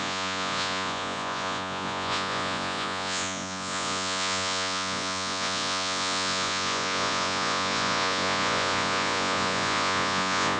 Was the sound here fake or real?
fake